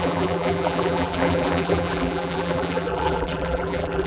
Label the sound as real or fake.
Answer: fake